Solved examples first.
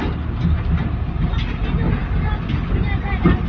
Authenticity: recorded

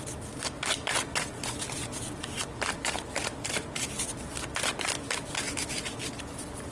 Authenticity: recorded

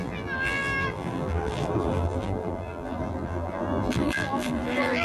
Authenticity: remade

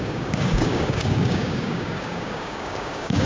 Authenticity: remade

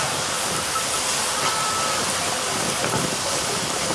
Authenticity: recorded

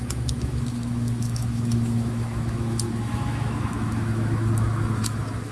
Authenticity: remade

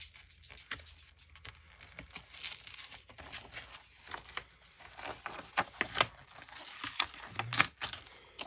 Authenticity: recorded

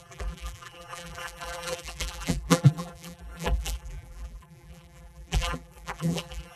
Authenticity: remade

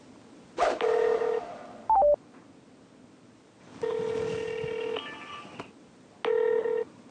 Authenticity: recorded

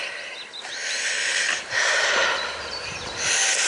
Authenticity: recorded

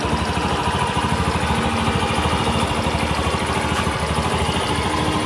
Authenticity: recorded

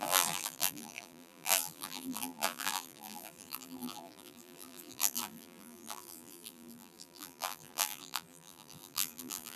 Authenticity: remade